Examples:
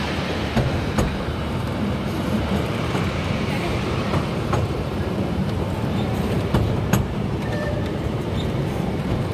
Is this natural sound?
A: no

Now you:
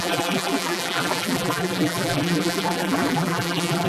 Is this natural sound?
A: no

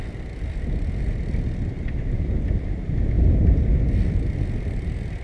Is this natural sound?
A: yes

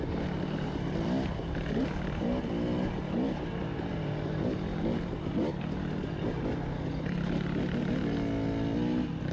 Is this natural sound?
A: yes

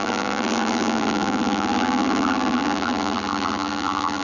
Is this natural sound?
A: no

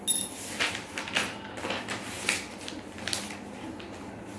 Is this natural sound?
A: yes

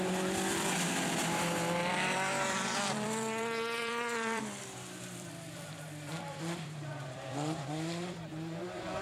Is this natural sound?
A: no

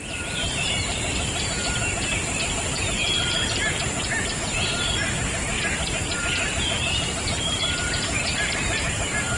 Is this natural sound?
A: no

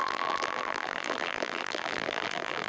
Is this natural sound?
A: no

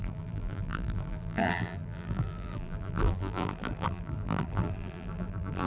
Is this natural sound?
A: no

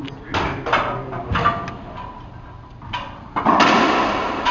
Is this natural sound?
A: yes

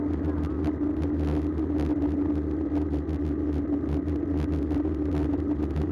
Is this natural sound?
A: yes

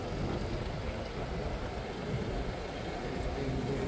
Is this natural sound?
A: yes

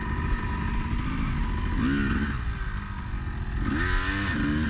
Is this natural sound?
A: yes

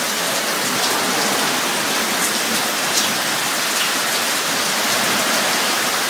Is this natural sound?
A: yes